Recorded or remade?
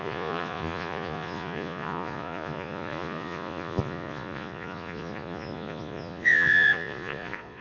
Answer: remade